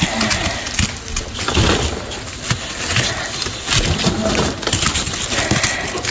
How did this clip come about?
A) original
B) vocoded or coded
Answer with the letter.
A